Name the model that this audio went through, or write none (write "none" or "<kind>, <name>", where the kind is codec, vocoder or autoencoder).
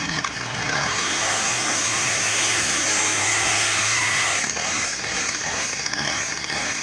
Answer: codec, SNAC